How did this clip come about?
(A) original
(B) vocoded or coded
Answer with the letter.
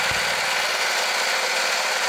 A